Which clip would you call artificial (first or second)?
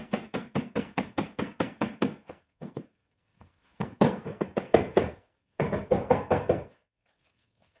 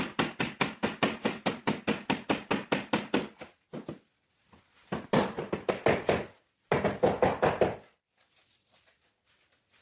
first